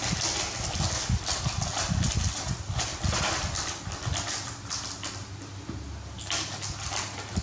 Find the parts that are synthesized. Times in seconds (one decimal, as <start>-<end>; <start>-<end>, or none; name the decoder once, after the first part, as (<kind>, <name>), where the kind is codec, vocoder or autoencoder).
none